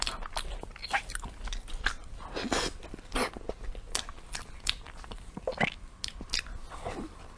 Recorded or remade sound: recorded